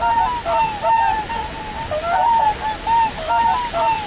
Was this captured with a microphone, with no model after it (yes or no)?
yes